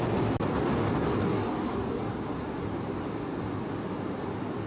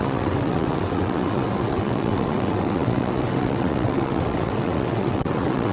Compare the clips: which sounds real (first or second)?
first